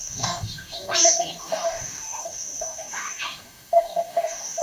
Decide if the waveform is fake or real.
fake